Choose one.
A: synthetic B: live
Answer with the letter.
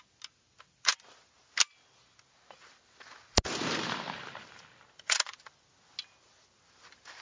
B